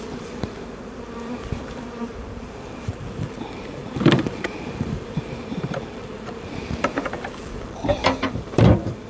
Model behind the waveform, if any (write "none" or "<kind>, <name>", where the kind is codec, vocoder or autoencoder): vocoder, BigVGAN v2